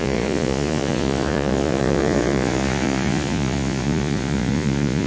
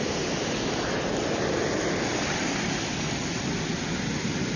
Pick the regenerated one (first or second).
first